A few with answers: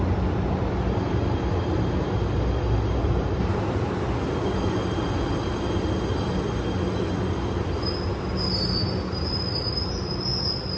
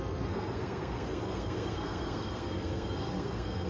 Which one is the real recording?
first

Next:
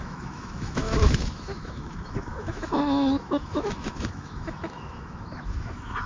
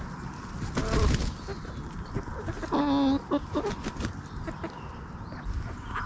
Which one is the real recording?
second